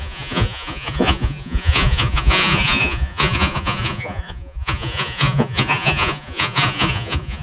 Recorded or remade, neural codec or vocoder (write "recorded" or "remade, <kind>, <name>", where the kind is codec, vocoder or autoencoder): remade, vocoder, Vocos